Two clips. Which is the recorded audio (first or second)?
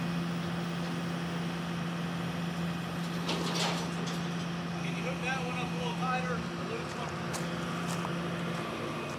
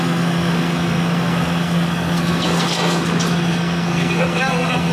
first